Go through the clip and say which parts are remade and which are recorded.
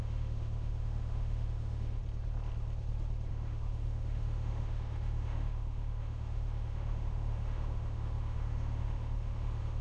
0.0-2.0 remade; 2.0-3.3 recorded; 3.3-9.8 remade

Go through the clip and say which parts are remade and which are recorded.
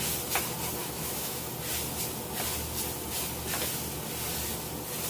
0.0-0.8 recorded; 0.8-1.5 remade; 1.5-5.1 recorded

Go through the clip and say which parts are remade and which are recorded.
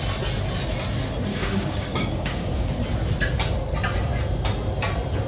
0.0-1.3 recorded; 1.3-2.8 remade; 2.8-5.3 recorded